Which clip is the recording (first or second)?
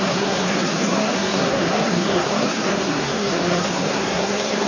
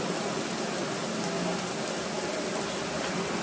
second